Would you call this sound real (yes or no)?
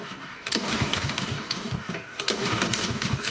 no